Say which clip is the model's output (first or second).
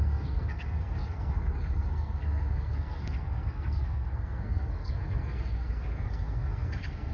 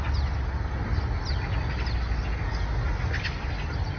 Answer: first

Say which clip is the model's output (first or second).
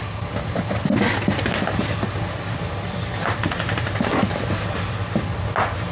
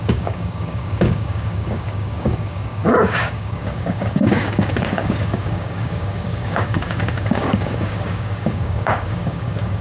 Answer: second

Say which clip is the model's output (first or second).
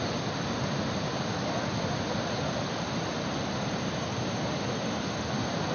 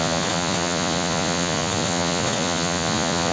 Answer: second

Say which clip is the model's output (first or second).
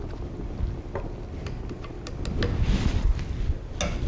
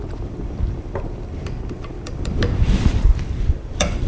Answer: second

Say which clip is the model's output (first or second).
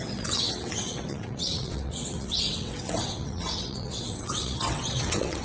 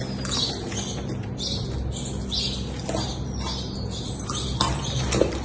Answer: first